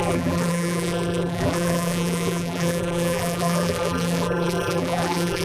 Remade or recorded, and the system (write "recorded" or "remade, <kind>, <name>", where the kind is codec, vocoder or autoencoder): remade, vocoder, BigVGAN v2